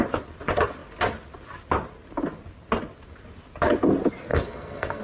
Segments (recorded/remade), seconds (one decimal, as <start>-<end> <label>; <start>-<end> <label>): 0.0-4.3 recorded; 4.3-5.0 remade